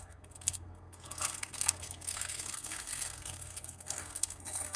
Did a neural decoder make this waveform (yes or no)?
yes